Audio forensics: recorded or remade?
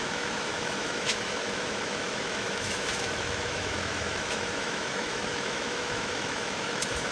remade